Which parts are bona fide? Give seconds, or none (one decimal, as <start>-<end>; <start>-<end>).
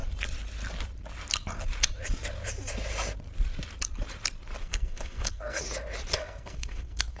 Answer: 0.0-4.6; 5.6-6.2